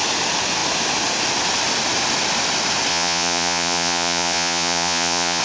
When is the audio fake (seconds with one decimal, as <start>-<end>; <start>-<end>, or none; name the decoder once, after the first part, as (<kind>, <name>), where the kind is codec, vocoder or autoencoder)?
2.9-5.4 (vocoder, Vocos)